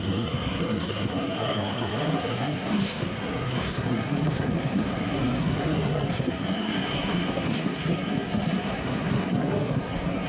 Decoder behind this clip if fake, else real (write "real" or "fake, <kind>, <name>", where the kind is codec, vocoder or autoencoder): fake, codec, SNAC